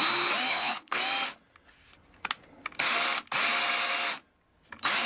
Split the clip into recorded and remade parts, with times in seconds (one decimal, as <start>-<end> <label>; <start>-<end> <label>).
0.0-0.5 recorded; 0.5-1.0 remade; 1.0-5.1 recorded

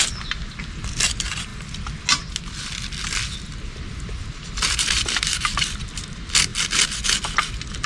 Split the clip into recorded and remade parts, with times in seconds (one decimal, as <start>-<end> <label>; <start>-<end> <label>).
0.0-7.9 recorded

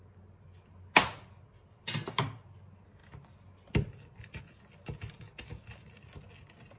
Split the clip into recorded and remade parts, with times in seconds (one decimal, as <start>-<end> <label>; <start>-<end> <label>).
0.0-6.8 recorded

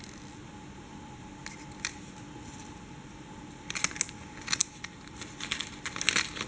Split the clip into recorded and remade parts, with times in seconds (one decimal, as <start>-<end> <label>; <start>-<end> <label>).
0.0-6.5 recorded

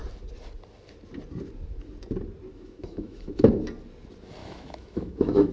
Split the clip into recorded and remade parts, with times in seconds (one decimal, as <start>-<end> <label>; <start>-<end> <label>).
0.0-2.5 recorded; 2.5-3.5 remade; 3.5-4.4 recorded; 4.4-5.5 remade

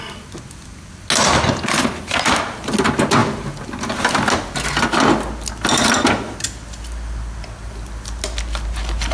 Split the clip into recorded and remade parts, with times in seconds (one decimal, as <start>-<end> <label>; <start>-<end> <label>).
0.0-9.1 recorded

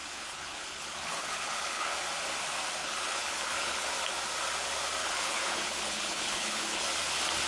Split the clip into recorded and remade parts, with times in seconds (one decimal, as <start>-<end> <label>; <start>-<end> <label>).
0.0-2.0 remade; 2.0-2.8 recorded; 2.8-3.9 remade; 3.9-5.0 recorded; 5.0-6.9 remade; 6.9-7.5 recorded